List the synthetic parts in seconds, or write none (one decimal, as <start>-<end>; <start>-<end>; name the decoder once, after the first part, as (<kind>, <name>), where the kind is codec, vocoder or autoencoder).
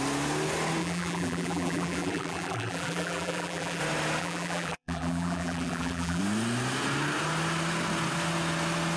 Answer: 0.8-3.8 (vocoder, BigVGAN v2); 4.2-6.2